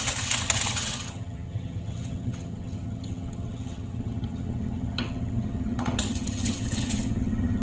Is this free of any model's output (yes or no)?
no